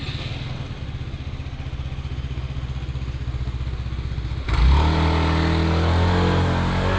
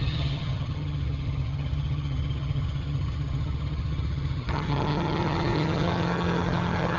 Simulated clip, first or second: second